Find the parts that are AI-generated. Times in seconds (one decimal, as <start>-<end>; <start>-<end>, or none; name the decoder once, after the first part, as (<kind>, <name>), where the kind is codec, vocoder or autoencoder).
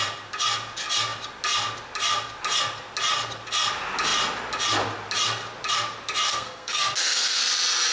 6.3-7.4 (codec, SNAC)